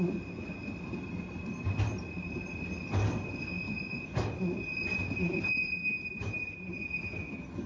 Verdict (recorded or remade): recorded